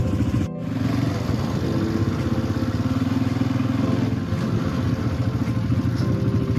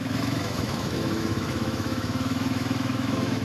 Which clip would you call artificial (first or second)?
second